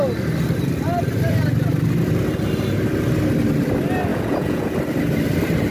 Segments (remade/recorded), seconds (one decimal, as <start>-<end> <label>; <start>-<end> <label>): 0.0-4.1 recorded; 4.1-4.7 remade; 4.7-5.7 recorded